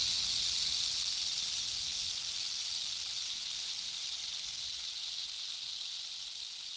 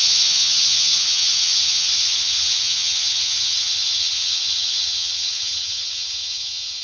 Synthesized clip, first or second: second